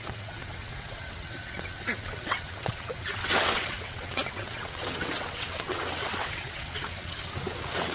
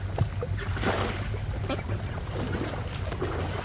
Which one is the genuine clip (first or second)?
second